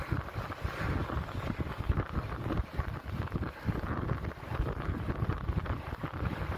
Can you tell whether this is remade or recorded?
remade